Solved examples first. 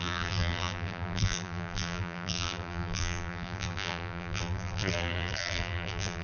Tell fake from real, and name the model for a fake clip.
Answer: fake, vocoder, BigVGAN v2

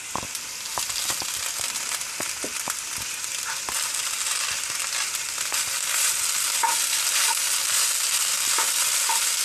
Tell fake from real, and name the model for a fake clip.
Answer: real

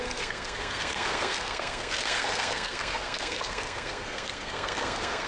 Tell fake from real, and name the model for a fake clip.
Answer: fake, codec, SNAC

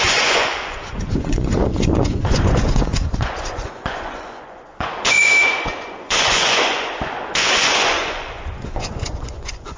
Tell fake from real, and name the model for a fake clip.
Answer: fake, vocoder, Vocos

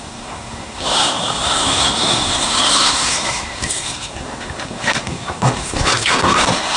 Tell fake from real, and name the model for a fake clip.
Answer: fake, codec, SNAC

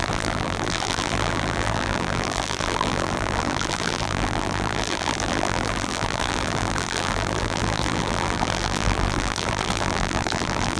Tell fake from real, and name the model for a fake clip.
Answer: fake, vocoder, BigVGAN v2